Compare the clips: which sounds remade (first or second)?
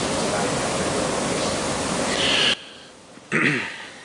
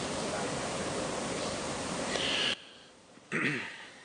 second